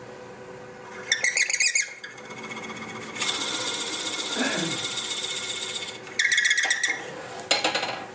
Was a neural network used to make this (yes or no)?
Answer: no